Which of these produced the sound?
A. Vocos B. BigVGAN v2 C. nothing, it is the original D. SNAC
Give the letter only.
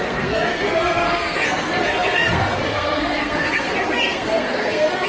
D